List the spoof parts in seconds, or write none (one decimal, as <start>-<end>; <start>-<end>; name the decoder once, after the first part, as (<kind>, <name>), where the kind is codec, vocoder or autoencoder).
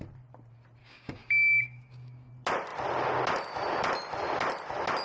0.8-2.3 (codec, DAC)